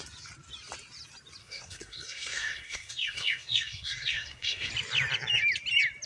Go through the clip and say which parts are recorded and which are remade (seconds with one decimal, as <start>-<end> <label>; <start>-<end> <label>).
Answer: 0.0-1.4 recorded; 1.4-4.7 remade; 4.7-6.1 recorded